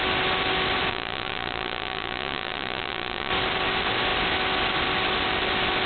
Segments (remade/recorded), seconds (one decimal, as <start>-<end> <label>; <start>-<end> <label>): 0.0-0.9 recorded; 0.9-3.3 remade; 3.3-5.9 recorded